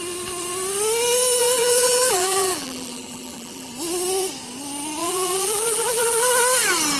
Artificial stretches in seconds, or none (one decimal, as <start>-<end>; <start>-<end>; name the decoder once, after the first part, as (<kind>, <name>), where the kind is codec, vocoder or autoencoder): 1.4-3.7 (vocoder, BigVGAN v2); 5.0-6.3